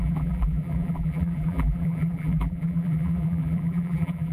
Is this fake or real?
fake